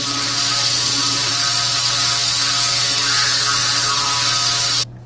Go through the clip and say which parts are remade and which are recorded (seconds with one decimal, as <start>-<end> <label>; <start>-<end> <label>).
0.0-5.1 recorded